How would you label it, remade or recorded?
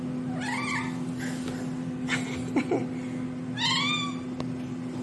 recorded